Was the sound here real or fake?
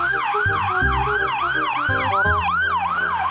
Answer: real